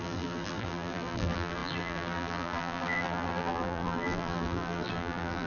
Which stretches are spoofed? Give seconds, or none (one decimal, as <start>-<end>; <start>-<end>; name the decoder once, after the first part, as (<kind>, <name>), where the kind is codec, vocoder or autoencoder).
0.0-5.5 (vocoder, BigVGAN v2)